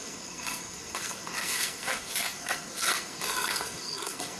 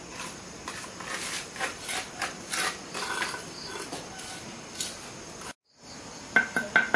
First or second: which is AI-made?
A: first